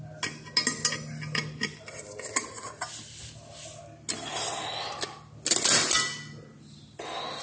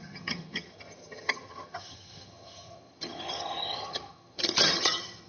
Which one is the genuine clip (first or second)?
first